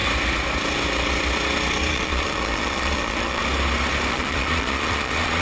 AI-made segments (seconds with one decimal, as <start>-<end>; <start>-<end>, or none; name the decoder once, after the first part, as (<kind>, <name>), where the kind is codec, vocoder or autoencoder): 1.9-3.4 (vocoder, Vocos); 4.1-5.4